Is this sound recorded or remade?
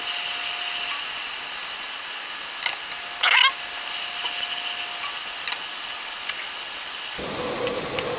recorded